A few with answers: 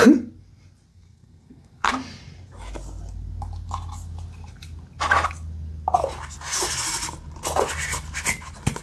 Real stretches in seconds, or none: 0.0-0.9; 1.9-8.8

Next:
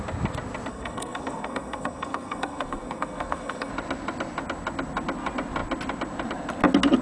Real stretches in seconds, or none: 0.0-0.7; 3.7-7.0

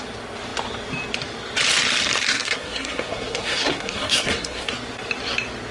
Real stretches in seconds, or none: 0.0-2.3; 4.7-5.7

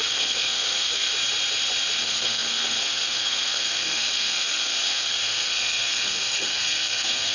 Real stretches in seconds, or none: 1.1-2.0

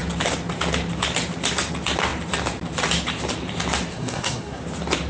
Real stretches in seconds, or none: 0.0-3.9; 4.6-5.1

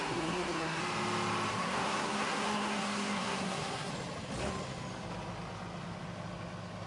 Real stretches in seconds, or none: 0.8-1.5; 3.9-6.9

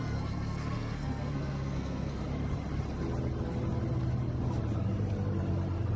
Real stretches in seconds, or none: 2.2-6.0